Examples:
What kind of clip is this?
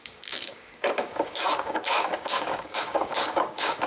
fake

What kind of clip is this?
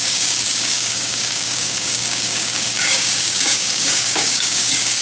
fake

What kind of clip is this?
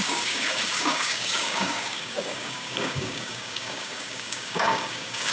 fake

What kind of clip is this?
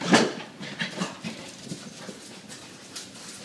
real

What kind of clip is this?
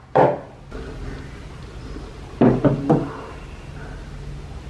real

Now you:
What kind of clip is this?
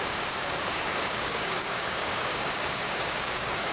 fake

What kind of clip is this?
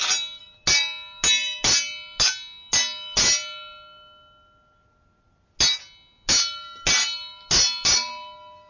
real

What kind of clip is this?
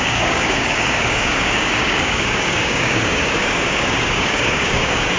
fake